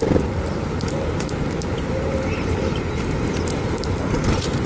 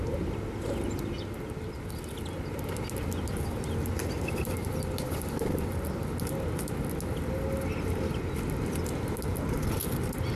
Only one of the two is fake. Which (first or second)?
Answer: first